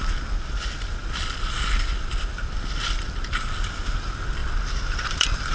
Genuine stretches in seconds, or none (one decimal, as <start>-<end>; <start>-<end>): 0.0-1.0; 3.4-4.4